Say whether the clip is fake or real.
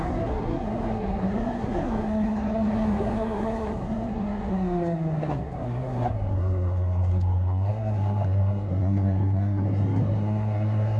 fake